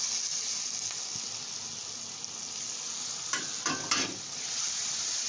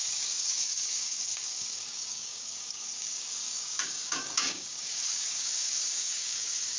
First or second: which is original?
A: first